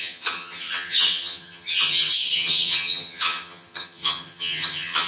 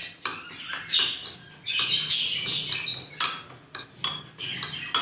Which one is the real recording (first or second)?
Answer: second